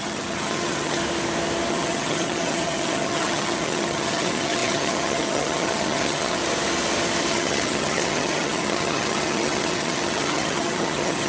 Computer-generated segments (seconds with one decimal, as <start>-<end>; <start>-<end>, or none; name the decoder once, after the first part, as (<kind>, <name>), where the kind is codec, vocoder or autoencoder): 0.0-1.0 (vocoder, HiFi-GAN); 1.7-6.4; 7.3-11.3